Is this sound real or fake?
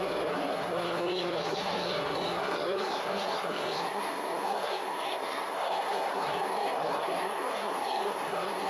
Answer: fake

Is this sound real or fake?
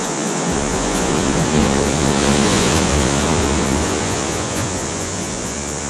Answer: fake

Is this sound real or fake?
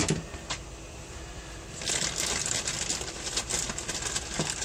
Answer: real